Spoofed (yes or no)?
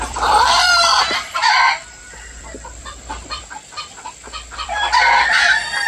yes